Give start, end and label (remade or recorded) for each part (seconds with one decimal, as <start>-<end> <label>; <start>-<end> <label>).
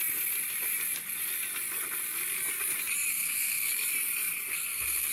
0.0-3.1 recorded; 3.1-3.7 remade; 3.7-4.5 recorded; 4.5-5.1 remade